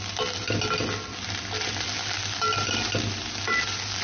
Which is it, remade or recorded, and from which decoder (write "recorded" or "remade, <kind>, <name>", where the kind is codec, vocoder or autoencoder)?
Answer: recorded